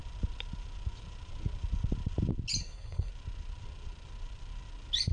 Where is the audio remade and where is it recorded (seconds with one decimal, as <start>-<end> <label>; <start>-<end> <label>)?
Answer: 0.0-2.6 recorded; 2.6-3.1 remade; 3.1-5.1 recorded